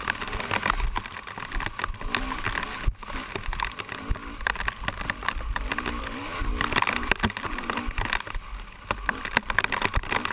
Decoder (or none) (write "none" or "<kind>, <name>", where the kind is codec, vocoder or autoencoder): none